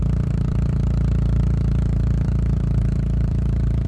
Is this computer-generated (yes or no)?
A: yes